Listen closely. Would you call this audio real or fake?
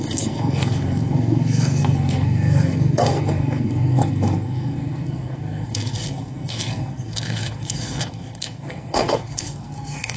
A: fake